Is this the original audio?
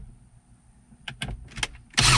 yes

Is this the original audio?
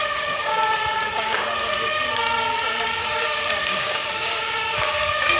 no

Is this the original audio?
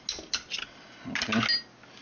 yes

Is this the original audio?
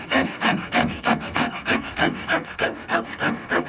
no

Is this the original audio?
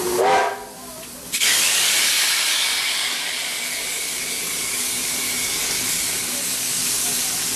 no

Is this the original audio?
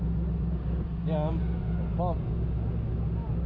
yes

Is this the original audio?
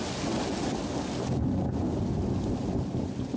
yes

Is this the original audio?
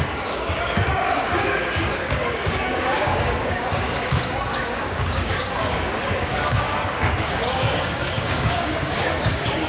no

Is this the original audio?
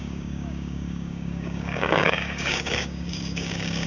no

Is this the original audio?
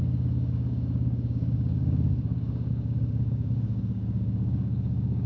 no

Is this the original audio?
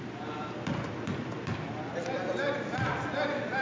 yes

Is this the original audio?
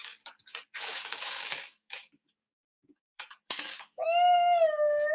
no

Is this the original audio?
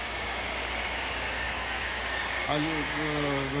no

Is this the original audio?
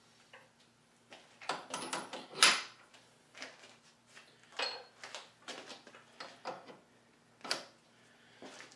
yes